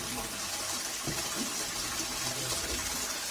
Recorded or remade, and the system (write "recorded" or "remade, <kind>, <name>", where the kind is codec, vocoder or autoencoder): remade, vocoder, BigVGAN v2